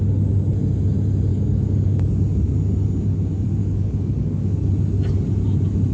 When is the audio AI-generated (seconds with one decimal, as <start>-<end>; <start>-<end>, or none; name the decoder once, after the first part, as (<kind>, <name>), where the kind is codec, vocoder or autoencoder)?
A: 1.3-2.1 (codec, DAC); 3.6-4.7